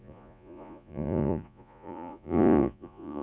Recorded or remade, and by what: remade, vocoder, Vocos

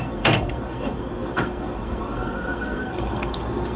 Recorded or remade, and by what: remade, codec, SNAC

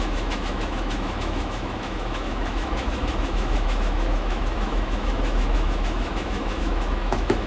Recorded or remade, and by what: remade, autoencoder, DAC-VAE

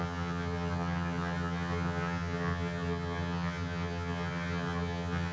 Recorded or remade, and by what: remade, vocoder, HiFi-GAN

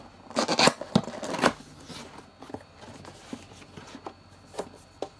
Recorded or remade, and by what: recorded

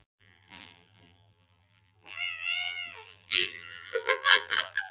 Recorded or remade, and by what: remade, vocoder, BigVGAN v2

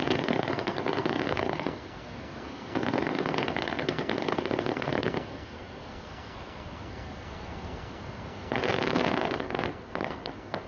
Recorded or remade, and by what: remade, codec, SNAC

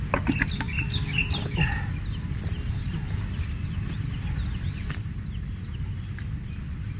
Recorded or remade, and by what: recorded